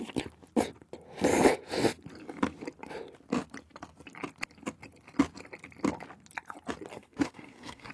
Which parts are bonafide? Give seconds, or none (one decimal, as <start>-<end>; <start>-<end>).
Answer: 0.0-6.9